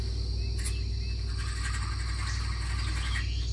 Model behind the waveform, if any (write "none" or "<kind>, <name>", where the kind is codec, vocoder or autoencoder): none